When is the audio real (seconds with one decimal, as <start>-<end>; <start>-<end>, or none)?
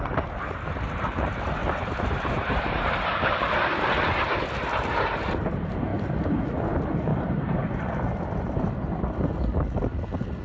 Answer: 0.0-1.6; 3.0-7.1; 8.7-10.4